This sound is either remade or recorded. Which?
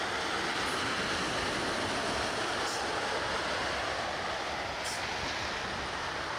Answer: recorded